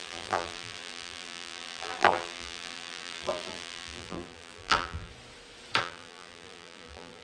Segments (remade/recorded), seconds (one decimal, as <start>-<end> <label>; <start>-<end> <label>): 0.0-5.1 remade; 5.1-5.8 recorded; 5.8-7.2 remade